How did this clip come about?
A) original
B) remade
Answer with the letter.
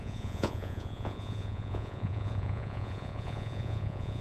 B